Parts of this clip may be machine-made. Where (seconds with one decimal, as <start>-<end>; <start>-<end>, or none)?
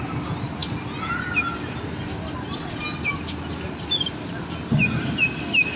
none